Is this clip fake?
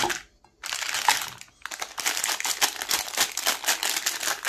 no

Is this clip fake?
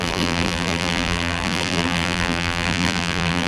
yes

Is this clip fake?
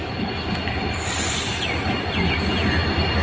no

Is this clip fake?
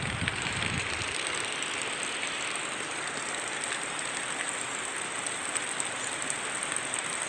no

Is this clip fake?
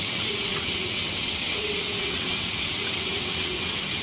yes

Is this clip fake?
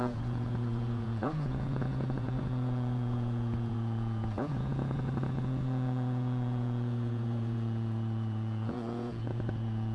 yes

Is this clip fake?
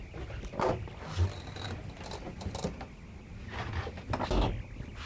no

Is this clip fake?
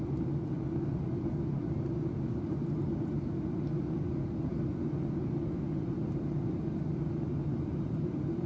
no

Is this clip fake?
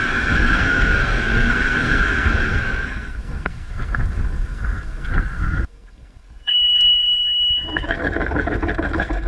yes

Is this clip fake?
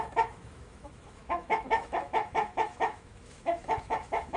yes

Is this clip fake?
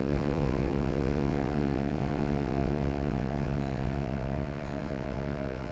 yes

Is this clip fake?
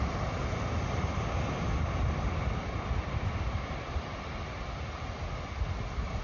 no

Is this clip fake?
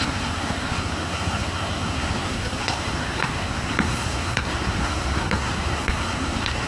yes